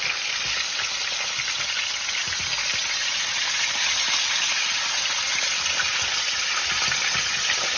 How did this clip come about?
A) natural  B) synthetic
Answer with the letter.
A